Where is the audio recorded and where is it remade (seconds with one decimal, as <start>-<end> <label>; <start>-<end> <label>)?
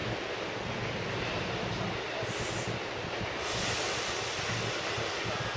0.0-5.6 recorded